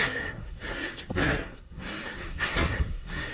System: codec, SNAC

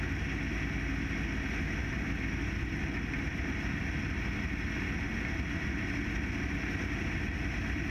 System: none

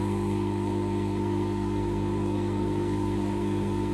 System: codec, SNAC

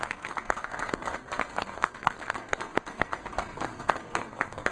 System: codec, SNAC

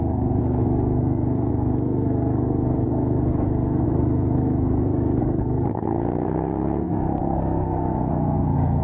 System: codec, SNAC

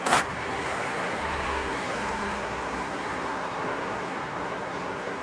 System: codec, SNAC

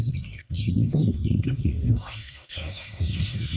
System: codec, SNAC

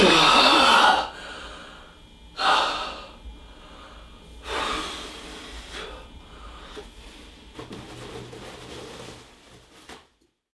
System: none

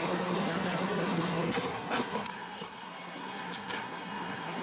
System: codec, SNAC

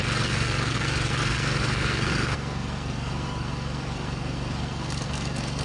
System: codec, SNAC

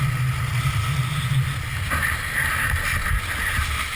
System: none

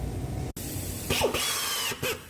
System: none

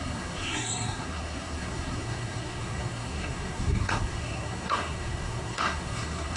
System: codec, SNAC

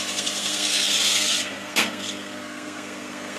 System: codec, SNAC